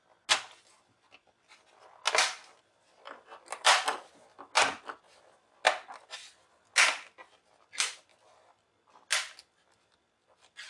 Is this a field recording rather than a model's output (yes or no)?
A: yes